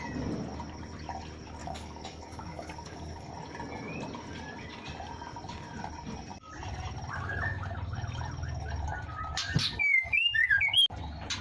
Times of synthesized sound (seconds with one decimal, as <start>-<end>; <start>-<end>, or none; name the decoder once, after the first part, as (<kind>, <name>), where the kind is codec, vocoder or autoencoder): 1.6-3.3 (codec, DAC); 9.6-10.5